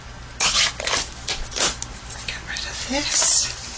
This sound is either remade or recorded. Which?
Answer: recorded